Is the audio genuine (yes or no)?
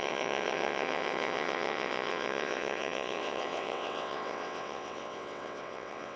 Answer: no